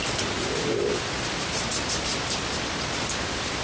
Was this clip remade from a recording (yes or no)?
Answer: no